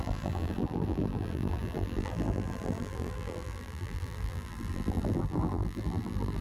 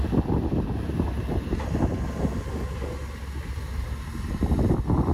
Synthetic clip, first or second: first